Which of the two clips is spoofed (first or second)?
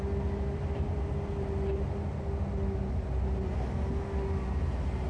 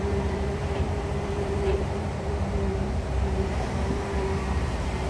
second